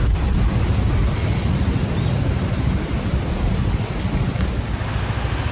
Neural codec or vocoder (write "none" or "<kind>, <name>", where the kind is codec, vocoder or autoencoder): none